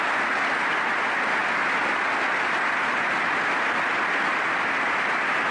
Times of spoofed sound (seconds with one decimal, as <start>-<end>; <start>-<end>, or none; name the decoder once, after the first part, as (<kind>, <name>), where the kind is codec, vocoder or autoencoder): none